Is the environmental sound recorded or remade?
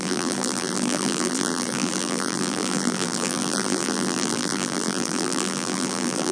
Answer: remade